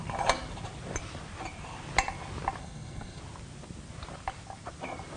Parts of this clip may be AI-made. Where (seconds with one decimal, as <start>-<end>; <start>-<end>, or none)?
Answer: 2.6-3.2